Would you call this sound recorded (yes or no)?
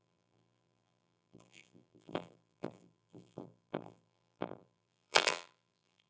no